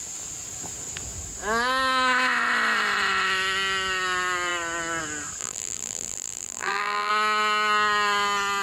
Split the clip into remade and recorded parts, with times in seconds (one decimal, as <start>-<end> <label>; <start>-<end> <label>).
0.0-5.4 recorded; 5.4-7.1 remade; 7.1-8.6 recorded